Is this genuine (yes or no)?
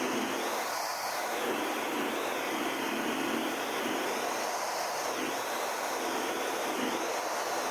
yes